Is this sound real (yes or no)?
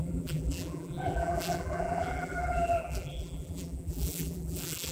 no